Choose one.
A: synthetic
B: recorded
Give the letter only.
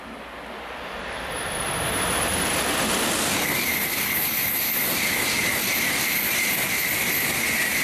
B